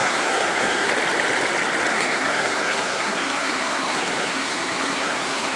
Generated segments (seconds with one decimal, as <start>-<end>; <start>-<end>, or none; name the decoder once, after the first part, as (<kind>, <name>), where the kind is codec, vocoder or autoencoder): 0.0-0.9 (codec, SNAC); 1.9-5.6